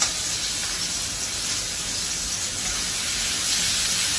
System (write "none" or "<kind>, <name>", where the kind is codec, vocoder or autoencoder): none